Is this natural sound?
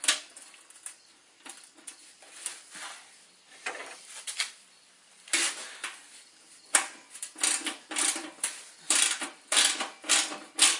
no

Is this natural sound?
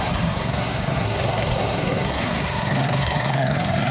no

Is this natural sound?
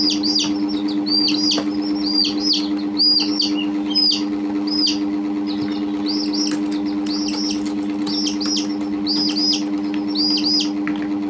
yes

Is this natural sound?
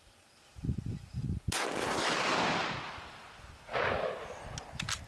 yes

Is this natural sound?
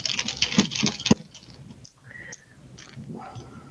yes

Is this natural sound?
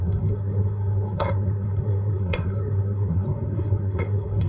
no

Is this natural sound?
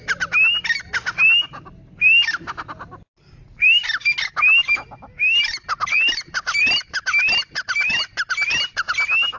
yes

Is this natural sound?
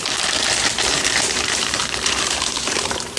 no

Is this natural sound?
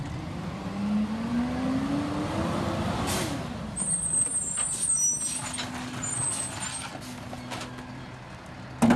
yes